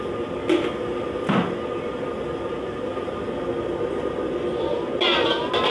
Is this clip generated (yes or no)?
no